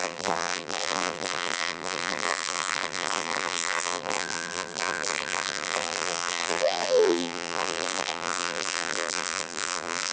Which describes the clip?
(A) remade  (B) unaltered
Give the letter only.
A